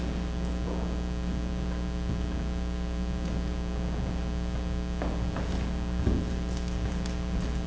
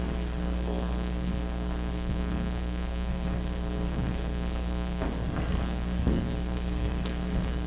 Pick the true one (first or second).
first